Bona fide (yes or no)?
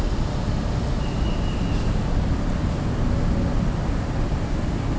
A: yes